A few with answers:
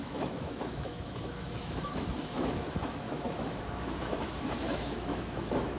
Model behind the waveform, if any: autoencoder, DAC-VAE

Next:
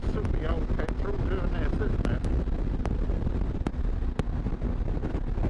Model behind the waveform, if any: none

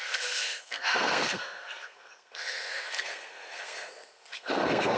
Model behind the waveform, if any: codec, SNAC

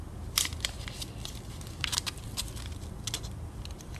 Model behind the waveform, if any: none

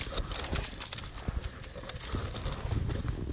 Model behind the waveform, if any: none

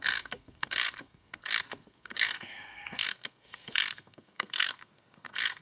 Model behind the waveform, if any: codec, SNAC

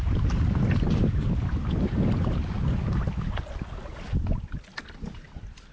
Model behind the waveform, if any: none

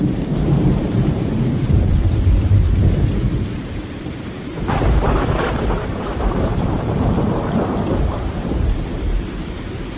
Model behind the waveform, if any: vocoder, BigVGAN v2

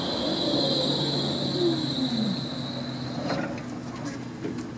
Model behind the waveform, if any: none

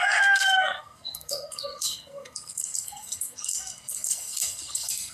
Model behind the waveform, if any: codec, SNAC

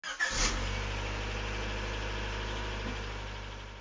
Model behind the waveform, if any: none